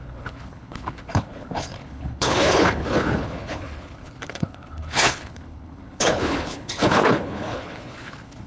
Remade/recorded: remade